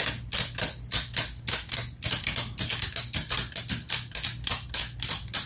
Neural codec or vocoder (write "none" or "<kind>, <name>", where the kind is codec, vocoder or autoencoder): none